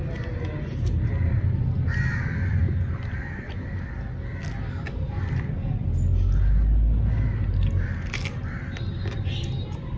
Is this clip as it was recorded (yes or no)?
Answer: yes